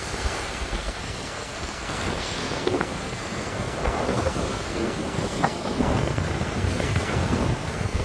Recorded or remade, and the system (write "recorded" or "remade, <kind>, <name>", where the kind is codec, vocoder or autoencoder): remade, codec, SNAC